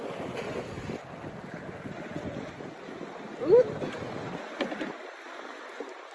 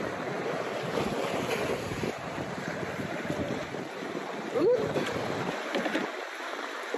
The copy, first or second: second